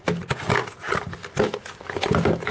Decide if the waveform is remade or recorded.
recorded